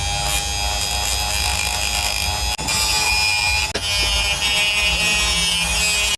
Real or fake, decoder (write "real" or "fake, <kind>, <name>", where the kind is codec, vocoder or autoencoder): real